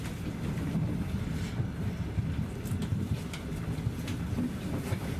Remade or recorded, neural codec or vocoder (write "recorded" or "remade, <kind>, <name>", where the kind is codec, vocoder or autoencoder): recorded